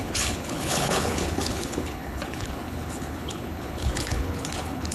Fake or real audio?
fake